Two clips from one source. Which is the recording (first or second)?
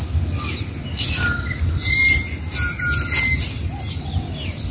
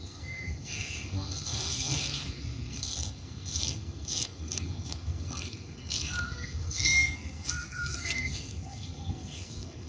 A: first